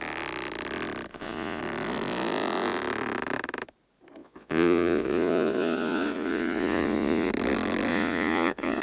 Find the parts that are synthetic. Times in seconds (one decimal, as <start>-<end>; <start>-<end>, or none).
1.1-1.6; 4.2-7.3; 7.9-8.8